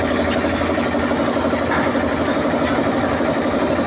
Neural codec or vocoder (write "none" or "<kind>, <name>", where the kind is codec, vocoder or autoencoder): none